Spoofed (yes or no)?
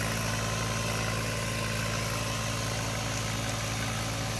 no